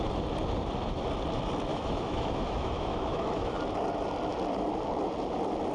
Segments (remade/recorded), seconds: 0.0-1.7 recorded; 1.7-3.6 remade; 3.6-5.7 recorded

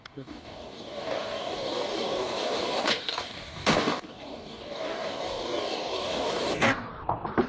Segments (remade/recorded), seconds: 0.0-6.9 remade; 6.9-7.5 recorded